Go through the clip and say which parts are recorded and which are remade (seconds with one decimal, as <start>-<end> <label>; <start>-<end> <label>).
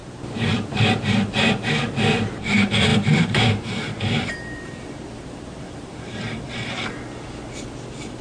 0.0-0.5 remade; 0.5-2.9 recorded; 2.9-6.7 remade; 6.7-8.2 recorded